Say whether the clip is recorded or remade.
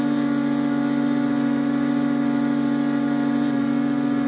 recorded